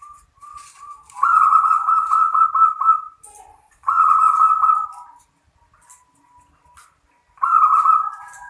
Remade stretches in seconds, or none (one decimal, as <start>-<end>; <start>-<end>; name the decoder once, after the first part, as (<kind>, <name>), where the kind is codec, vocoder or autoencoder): 0.5-2.4 (vocoder, Vocos); 3.5-4.7